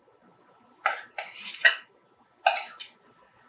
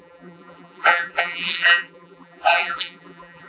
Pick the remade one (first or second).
second